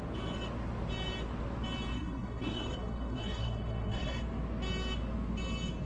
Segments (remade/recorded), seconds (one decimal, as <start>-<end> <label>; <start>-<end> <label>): 0.0-1.9 recorded; 1.9-4.2 remade; 4.2-5.9 recorded